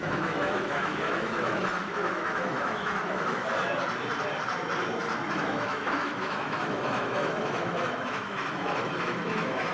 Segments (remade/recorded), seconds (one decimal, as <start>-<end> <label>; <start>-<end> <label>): 0.0-3.4 remade; 3.4-5.3 recorded; 5.3-9.7 remade